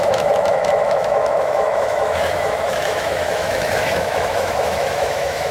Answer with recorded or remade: remade